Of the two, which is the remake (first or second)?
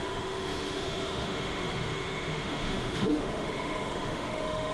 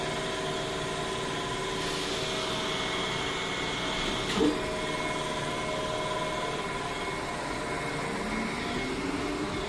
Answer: first